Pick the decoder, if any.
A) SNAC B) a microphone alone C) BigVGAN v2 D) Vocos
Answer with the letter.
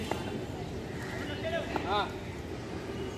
B